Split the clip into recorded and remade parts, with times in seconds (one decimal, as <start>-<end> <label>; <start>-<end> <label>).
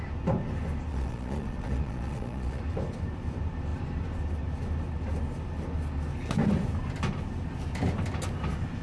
0.0-0.9 recorded; 0.9-2.6 remade; 2.6-8.8 recorded